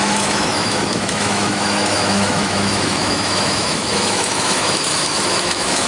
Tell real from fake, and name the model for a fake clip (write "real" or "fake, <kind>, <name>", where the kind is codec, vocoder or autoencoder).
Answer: fake, autoencoder, DAC-VAE